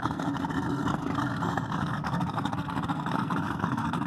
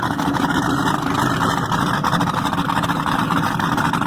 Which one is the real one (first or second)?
second